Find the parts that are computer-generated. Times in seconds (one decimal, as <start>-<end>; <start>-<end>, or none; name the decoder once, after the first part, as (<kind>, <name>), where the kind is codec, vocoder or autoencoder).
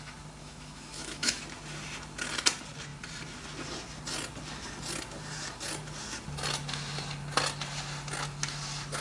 0.4-1.4 (autoencoder, DAC-VAE)